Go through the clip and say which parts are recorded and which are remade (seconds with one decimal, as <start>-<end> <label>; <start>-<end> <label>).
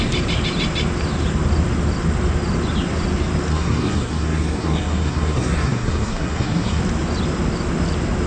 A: 0.0-3.5 recorded; 3.5-6.8 remade; 6.8-8.3 recorded